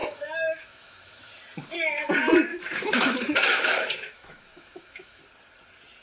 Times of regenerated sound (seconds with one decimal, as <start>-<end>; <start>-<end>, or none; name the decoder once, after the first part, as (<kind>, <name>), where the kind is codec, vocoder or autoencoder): 0.0-1.3 (autoencoder, DAC-VAE); 2.5-5.2